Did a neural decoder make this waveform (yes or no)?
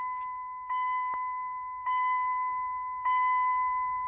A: no